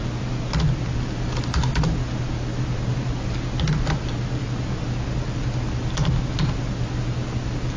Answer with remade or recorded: recorded